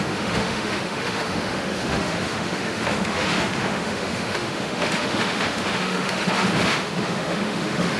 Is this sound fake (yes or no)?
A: yes